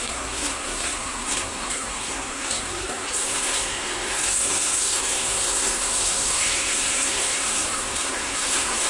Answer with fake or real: fake